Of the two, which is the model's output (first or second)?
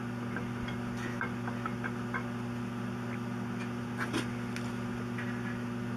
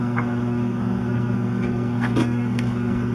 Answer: second